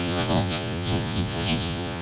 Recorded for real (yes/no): no